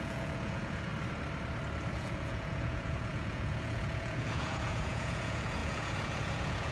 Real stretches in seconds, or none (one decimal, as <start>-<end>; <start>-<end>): 0.9-1.9